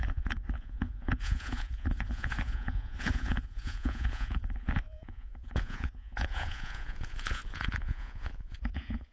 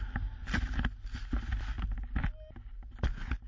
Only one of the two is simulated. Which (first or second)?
first